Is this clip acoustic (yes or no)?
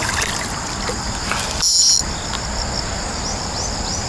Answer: yes